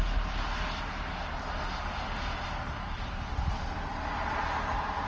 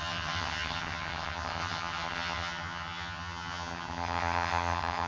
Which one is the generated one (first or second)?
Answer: second